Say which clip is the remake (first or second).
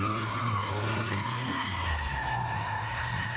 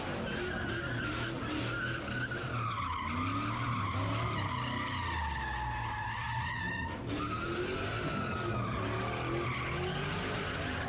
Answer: first